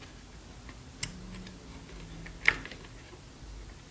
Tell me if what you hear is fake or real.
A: real